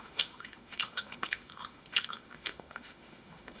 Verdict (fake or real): fake